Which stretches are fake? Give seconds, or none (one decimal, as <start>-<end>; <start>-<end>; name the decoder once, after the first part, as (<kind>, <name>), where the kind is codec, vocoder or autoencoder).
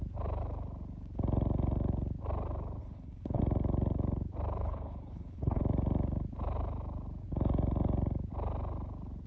2.8-3.4 (codec, HILCodec); 4.6-5.6